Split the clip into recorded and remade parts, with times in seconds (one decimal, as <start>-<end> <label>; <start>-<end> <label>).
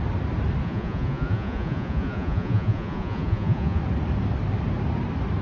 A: 0.0-0.6 recorded; 0.6-3.8 remade; 3.8-5.4 recorded